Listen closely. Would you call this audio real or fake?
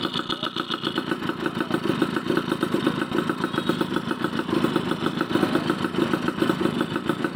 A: real